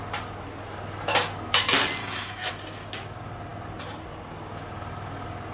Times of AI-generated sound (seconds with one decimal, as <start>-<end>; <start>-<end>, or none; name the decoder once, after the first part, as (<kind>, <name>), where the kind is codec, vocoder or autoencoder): 2.0-2.5 (autoencoder, DAC-VAE)